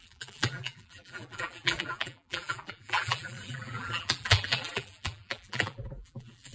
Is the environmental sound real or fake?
fake